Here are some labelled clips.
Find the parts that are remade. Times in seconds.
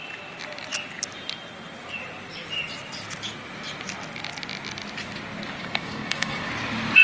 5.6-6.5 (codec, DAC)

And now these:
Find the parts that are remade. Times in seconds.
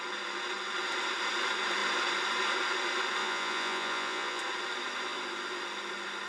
3.2-4.4 (vocoder, Vocos)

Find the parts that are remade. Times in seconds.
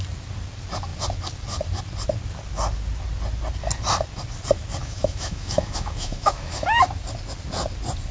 4.8-6.8 (autoencoder, DAC-VAE)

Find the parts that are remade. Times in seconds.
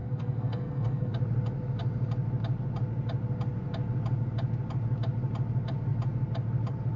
0.0-1.1 (codec, SNAC)